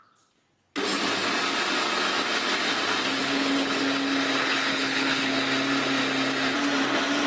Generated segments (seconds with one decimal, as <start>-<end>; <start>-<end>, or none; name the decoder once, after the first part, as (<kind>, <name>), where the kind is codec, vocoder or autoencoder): 3.2-3.8 (codec, HILCodec); 4.4-5.3